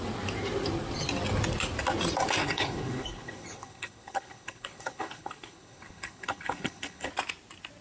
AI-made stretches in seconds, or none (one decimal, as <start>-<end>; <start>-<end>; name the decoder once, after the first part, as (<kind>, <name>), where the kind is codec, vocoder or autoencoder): 2.4-7.1 (codec, HILCodec)